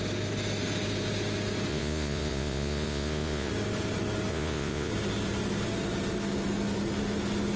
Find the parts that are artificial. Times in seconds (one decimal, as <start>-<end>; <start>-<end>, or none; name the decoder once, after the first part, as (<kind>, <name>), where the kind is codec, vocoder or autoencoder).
1.7-3.5 (vocoder, Vocos); 4.3-4.9